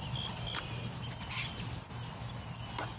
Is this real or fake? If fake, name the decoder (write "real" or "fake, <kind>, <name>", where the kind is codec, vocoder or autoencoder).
real